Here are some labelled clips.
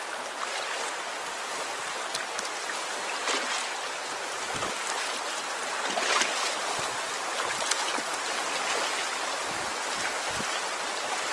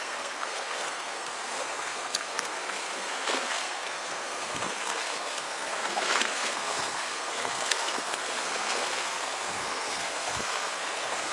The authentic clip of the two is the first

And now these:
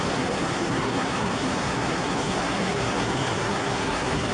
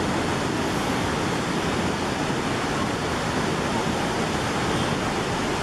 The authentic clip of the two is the second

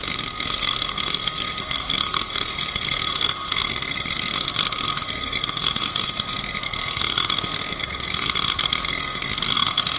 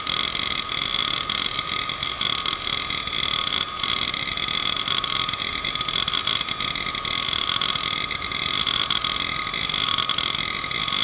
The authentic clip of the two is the second